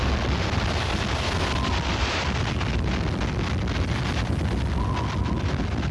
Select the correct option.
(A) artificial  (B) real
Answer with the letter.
B